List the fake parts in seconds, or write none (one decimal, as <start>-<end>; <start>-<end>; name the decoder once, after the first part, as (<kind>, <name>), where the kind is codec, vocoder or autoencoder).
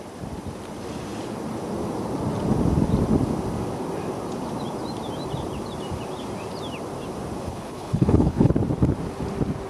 7.5-8.5 (codec, HILCodec)